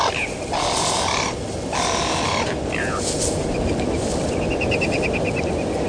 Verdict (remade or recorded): recorded